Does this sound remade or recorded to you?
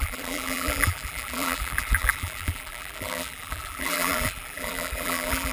remade